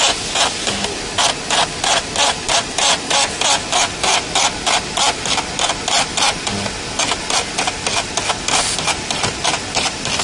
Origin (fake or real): real